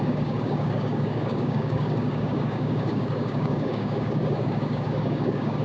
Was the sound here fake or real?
fake